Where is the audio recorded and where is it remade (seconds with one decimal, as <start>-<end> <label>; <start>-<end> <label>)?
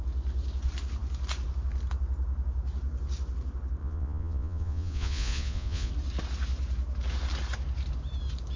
0.0-3.8 recorded; 3.8-5.9 remade; 5.9-8.6 recorded